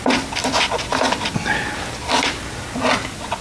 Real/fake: real